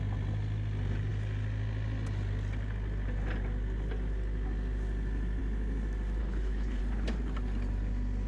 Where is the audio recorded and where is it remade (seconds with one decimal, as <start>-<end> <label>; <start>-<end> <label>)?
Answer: 0.0-6.2 recorded; 6.2-6.8 remade; 6.8-8.3 recorded